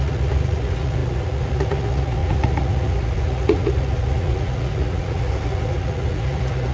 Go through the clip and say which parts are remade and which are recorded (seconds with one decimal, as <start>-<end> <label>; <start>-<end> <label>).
0.0-6.7 remade